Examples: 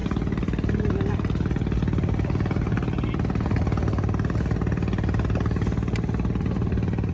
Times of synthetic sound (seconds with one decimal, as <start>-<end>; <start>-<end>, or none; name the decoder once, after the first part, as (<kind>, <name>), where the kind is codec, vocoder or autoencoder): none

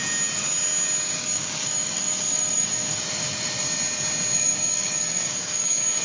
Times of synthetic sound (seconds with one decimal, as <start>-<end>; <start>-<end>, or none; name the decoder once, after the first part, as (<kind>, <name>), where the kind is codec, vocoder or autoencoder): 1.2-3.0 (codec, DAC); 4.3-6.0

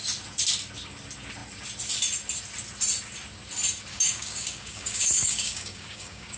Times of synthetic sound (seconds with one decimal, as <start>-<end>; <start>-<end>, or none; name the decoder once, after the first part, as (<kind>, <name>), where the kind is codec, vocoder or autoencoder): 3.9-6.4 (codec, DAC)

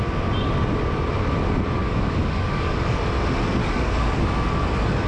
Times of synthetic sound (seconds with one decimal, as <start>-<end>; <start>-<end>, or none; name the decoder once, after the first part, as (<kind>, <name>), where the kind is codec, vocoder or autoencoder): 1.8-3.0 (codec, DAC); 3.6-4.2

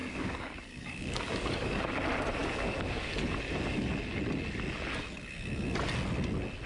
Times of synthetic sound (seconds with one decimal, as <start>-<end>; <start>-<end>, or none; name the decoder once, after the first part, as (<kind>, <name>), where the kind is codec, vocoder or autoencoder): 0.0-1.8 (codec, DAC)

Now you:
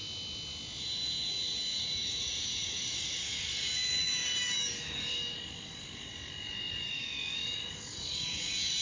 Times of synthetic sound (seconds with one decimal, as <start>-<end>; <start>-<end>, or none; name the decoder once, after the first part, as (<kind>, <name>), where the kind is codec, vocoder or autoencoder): 0.8-8.8 (codec, DAC)

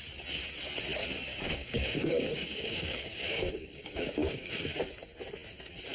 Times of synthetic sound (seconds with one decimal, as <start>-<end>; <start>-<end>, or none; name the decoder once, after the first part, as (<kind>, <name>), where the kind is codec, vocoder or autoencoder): 1.3-4.8 (codec, DAC)

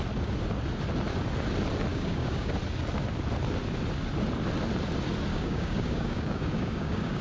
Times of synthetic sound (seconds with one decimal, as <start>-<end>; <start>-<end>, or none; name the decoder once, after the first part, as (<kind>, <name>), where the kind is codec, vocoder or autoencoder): 1.9-2.5 (codec, DAC); 5.3-7.2